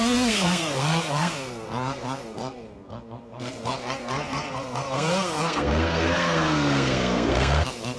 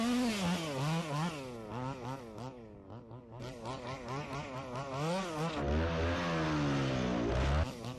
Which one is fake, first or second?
first